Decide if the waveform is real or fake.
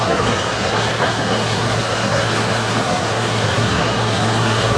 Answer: fake